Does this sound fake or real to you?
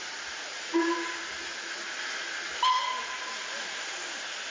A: real